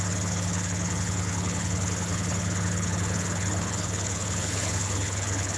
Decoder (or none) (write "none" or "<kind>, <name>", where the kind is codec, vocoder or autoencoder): codec, HILCodec